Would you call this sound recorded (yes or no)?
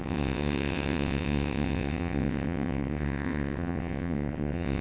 no